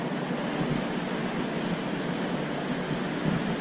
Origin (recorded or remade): recorded